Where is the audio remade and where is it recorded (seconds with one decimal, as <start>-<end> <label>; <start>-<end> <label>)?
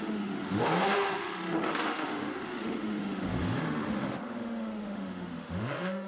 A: 0.0-6.1 remade